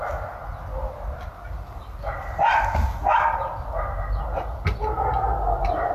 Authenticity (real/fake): real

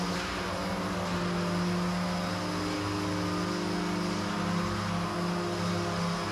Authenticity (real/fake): real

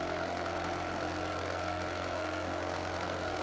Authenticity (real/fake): fake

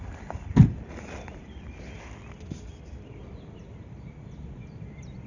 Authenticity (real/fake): real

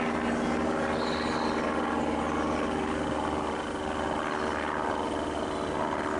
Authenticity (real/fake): real